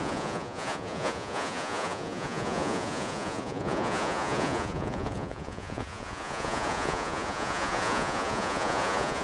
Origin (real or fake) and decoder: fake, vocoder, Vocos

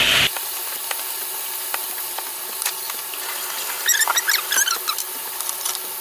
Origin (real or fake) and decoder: real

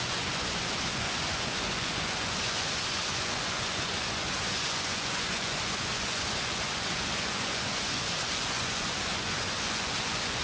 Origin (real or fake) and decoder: fake, vocoder, Vocos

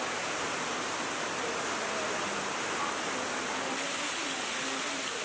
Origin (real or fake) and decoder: real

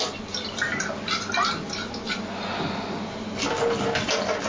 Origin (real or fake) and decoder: real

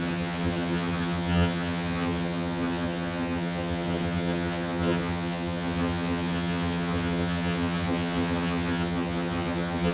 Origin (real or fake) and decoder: fake, vocoder, HiFi-GAN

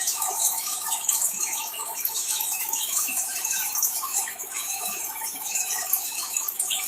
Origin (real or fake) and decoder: fake, autoencoder, DAC-VAE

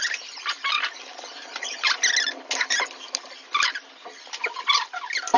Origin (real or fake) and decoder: real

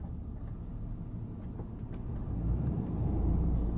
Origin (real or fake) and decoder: fake, vocoder, BigVGAN v2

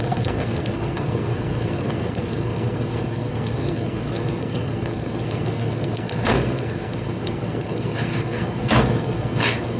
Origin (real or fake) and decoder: fake, codec, SNAC